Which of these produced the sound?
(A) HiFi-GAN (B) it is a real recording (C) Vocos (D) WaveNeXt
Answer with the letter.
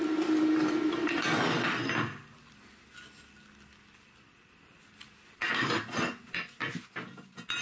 B